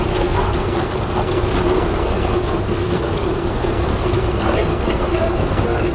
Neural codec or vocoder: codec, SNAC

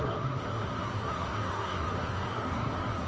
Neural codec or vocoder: codec, SNAC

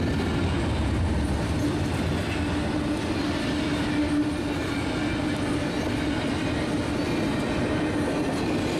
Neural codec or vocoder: none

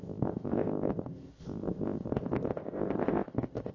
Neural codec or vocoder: codec, ZipCodec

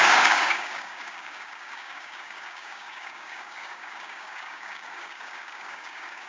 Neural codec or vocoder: codec, DAC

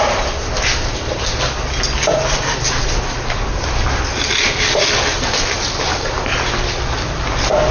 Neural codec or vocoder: none